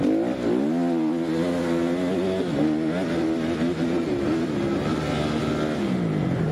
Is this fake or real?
real